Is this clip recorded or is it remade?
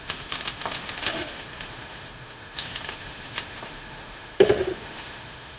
remade